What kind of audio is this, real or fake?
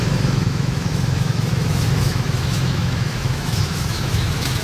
fake